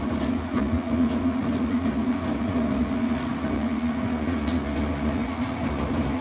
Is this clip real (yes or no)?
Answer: no